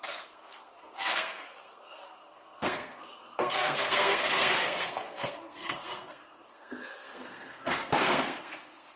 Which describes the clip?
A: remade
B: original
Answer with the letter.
A